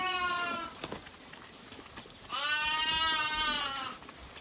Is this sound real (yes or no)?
yes